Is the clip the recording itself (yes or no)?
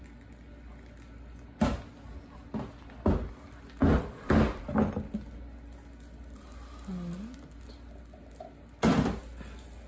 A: yes